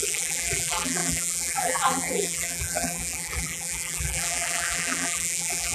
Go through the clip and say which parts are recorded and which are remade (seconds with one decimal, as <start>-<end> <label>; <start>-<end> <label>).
0.0-5.7 remade